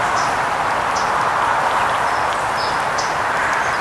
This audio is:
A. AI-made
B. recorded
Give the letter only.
B